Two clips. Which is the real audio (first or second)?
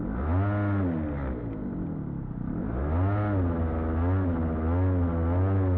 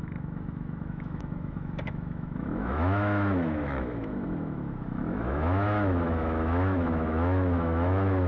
first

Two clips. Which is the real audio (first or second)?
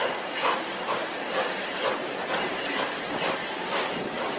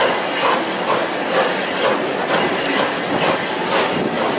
second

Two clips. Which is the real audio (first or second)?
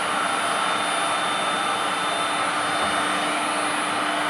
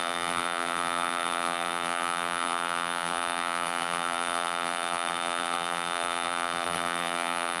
first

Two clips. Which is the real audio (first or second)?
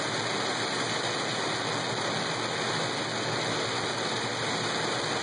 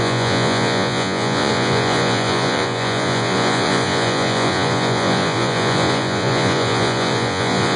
first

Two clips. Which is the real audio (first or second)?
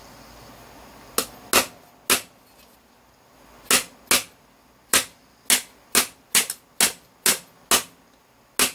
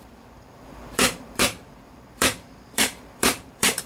first